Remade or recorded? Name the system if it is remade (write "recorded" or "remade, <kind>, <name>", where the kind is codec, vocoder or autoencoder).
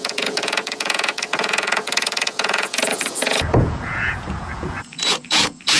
remade, vocoder, Vocos